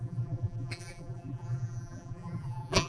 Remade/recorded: remade